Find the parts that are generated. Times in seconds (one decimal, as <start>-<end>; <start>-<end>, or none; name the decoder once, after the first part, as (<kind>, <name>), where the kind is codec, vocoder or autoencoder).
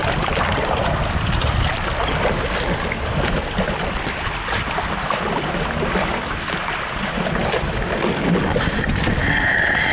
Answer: 0.0-4.7 (vocoder, BigVGAN v2)